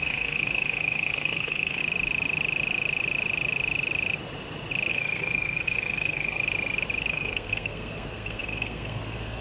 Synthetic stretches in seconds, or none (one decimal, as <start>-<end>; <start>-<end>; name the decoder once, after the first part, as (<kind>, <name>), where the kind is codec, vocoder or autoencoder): 0.0-1.8 (codec, SNAC); 4.9-6.4; 7.1-9.4